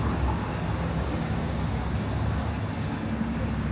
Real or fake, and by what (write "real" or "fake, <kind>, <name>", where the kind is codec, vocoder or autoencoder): fake, codec, DAC